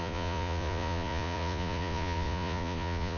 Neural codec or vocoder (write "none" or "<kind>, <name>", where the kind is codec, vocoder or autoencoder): vocoder, Vocos